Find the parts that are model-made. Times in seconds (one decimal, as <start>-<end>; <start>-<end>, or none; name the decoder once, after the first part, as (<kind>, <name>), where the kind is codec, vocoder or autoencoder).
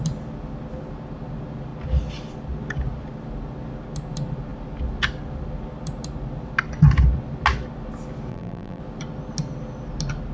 8.3-8.8 (vocoder, BigVGAN v2)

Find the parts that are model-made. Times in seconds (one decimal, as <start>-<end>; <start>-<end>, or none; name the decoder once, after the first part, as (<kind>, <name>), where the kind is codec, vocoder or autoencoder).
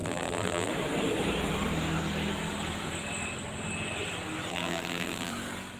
0.0-0.7 (vocoder, BigVGAN v2); 4.5-5.3